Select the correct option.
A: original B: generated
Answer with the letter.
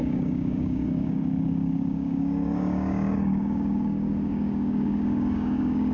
B